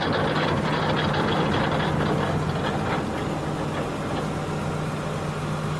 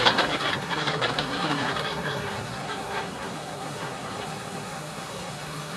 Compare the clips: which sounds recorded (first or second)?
first